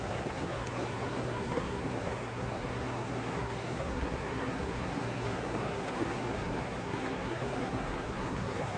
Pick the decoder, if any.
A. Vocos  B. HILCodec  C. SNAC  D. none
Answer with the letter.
C